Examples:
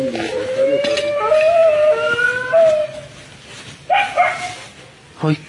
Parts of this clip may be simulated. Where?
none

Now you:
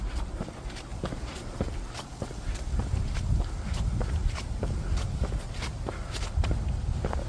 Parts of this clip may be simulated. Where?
0.9-1.6 (vocoder, BigVGAN v2)